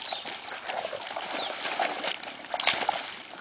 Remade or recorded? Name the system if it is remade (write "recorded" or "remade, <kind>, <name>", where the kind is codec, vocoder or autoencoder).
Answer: recorded